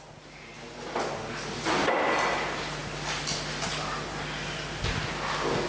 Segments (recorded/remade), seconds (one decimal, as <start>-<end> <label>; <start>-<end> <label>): 0.0-5.7 recorded